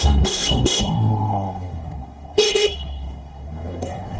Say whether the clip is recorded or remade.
remade